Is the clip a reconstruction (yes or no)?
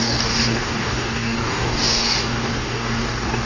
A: yes